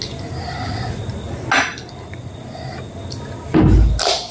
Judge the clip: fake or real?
real